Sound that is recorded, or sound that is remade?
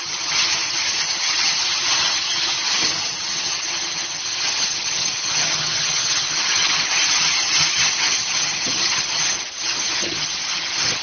remade